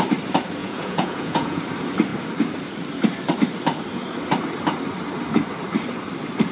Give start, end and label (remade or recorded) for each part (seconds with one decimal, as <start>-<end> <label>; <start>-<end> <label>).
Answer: 0.0-0.6 recorded; 0.6-1.6 remade; 1.6-6.5 recorded